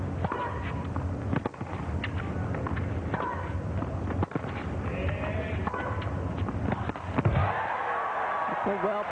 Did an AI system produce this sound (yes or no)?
no